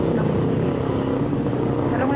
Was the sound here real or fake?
fake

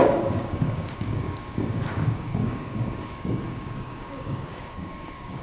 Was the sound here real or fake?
fake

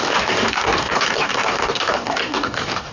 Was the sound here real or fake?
fake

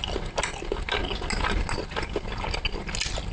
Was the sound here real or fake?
real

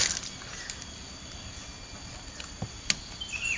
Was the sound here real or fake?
real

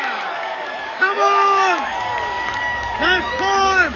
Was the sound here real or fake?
fake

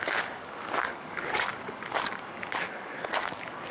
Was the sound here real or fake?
fake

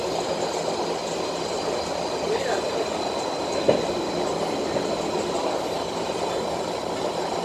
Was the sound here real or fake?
real